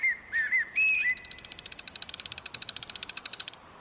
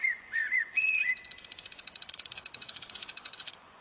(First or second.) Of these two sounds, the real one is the first